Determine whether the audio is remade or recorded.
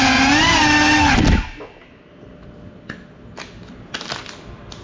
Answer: recorded